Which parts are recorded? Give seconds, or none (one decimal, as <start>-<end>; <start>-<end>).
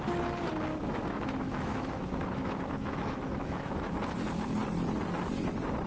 0.0-0.7; 3.9-5.9